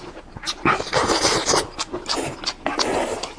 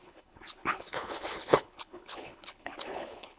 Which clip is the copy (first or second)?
second